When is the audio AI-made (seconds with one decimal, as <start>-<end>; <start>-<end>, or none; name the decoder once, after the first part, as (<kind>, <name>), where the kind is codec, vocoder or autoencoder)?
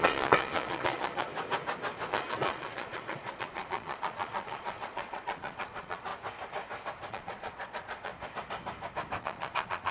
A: 0.0-1.3 (vocoder, Vocos); 2.1-6.1; 7.1-8.1; 9.2-9.9